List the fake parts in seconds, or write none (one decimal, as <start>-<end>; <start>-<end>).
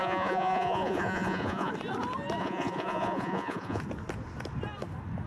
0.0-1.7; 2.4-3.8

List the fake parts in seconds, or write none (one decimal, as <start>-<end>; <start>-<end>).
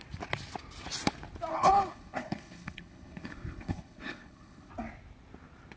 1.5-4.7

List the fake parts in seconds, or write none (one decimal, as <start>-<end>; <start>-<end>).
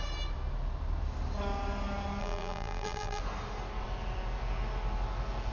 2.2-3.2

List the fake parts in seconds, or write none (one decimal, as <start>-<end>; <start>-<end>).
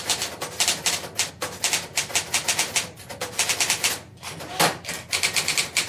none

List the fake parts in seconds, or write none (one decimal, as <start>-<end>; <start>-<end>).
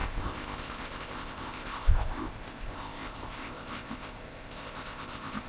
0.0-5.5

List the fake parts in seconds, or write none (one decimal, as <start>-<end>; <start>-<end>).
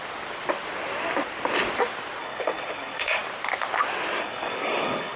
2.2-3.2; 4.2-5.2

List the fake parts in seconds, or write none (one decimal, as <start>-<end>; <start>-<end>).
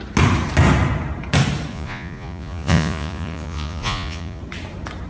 1.7-4.4